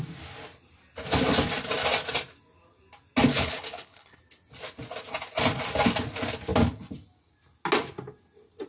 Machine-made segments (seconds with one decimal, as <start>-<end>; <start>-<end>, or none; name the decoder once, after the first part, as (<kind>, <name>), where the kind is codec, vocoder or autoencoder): 3.3-4.2 (codec, HILCodec)

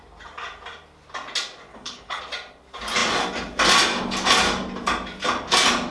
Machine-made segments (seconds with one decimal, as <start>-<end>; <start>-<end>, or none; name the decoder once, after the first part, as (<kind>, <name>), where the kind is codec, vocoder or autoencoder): 1.7-2.2 (codec, HILCodec)

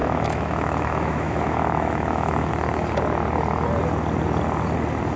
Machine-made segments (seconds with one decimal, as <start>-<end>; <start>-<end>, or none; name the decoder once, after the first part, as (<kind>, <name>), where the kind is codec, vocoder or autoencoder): 0.0-2.5 (autoencoder, DAC-VAE)

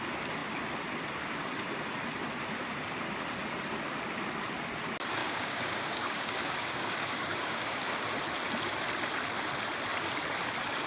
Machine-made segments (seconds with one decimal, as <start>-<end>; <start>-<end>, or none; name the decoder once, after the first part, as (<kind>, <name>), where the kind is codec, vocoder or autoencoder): 5.2-8.1 (codec, DAC)

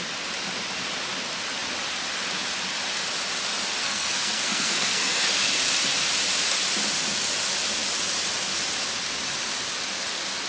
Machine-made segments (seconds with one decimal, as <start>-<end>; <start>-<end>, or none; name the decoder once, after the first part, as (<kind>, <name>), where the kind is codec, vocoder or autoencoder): 3.8-5.6 (codec, SNAC)

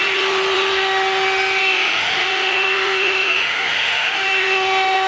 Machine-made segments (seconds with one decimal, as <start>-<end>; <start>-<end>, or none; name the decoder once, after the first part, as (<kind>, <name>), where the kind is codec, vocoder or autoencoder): 1.6-5.1 (autoencoder, DAC-VAE)